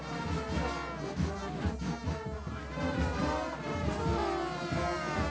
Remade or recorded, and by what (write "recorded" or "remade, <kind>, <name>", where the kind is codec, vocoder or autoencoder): recorded